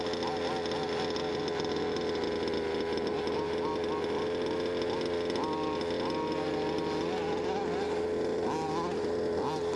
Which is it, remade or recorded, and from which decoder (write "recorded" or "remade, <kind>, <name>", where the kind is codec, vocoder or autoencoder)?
recorded